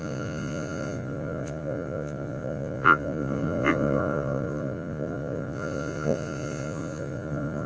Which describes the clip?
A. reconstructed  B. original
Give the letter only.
A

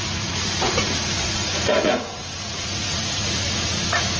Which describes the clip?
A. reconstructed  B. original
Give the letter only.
A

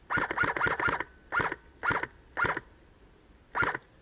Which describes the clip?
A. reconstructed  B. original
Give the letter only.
B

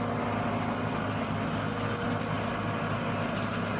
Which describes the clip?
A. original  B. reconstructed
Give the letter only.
A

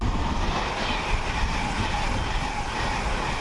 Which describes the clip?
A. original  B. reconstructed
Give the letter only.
A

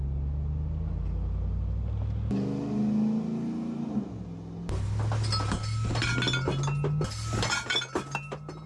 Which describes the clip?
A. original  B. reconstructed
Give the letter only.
A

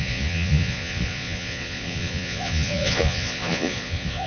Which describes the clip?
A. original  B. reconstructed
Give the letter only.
B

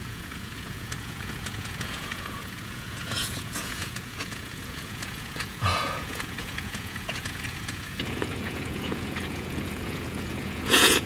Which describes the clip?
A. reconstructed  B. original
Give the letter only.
A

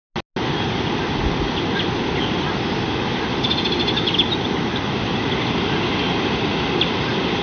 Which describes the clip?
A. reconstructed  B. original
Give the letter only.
B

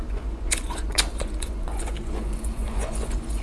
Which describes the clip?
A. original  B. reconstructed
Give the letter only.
B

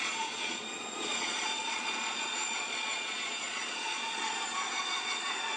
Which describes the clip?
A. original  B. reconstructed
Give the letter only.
B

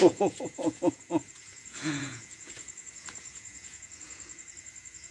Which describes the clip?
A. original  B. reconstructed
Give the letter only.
B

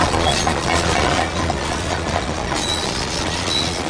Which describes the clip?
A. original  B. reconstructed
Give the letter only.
B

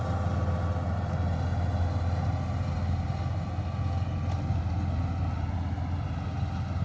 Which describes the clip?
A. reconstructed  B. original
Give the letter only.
B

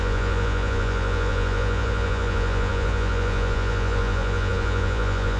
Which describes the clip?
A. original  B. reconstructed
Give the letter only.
B